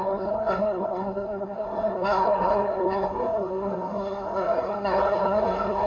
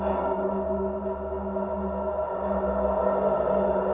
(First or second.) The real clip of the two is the second